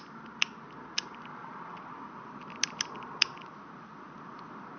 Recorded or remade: recorded